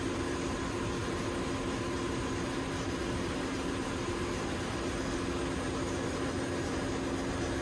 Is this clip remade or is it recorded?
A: recorded